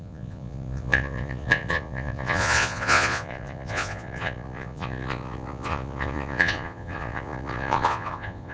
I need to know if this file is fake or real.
fake